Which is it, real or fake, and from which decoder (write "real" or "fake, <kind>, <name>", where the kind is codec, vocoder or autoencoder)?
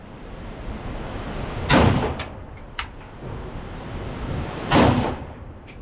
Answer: fake, vocoder, BigVGAN v2